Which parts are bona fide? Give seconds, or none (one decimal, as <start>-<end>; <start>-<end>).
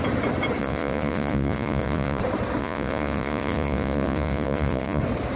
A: 0.0-0.6; 2.2-2.6; 5.0-5.4